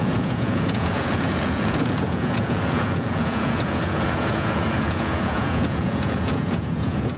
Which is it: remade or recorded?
remade